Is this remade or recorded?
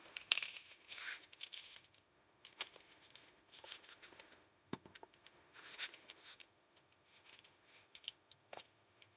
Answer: remade